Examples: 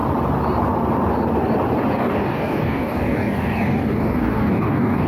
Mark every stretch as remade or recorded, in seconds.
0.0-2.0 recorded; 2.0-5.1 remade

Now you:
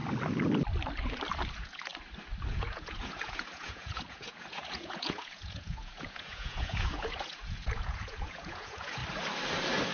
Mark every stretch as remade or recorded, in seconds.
0.0-1.5 recorded; 1.5-1.9 remade; 1.9-2.5 recorded; 2.5-9.0 remade; 9.0-9.9 recorded

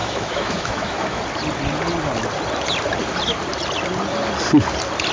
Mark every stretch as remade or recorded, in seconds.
0.0-1.2 remade; 1.2-5.1 recorded

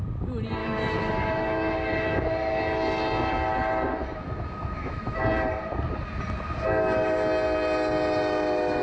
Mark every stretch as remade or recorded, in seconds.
0.0-0.6 recorded; 0.6-2.6 remade; 2.6-4.0 recorded; 4.0-5.2 remade; 5.2-8.8 recorded